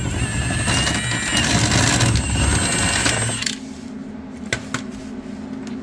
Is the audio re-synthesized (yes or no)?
no